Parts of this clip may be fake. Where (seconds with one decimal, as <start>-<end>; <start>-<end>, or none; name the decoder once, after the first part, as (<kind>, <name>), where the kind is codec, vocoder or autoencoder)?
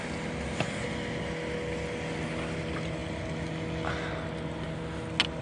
none